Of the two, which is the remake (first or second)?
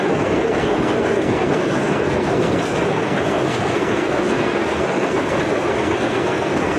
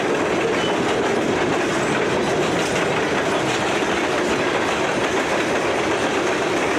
first